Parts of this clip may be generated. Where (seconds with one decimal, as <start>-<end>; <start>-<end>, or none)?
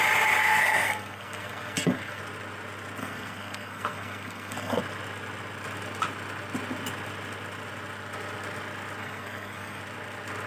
0.4-2.2; 3.0-4.8; 9.0-9.8